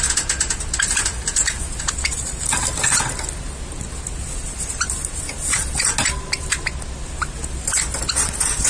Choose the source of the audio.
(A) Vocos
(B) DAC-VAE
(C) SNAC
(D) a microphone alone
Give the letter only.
D